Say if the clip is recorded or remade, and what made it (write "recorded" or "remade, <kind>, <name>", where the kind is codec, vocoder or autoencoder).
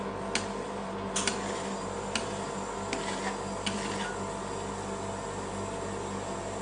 recorded